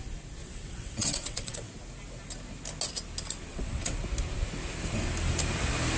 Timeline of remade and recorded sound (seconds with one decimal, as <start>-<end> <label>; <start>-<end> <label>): 0.0-0.4 recorded; 0.4-1.7 remade; 1.7-3.5 recorded; 3.5-4.0 remade; 4.0-6.0 recorded